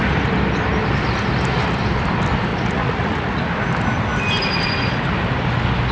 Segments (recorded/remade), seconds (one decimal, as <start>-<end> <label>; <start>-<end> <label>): 0.0-2.5 recorded; 2.5-3.4 remade; 3.4-5.9 recorded